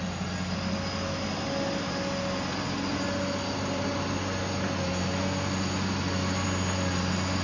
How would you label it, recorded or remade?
recorded